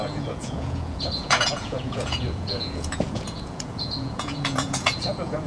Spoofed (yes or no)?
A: yes